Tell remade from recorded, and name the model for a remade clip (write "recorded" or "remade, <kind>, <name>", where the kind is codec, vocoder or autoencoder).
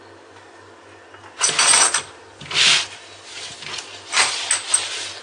recorded